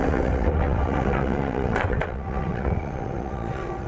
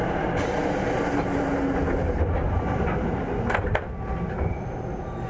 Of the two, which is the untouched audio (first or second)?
second